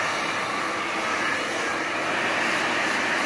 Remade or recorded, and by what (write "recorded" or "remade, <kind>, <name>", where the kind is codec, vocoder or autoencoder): recorded